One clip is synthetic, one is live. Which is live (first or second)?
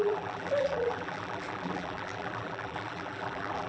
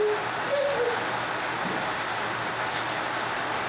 second